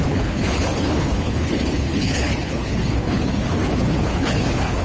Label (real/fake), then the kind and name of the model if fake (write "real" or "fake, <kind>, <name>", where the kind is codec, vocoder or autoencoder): fake, codec, HILCodec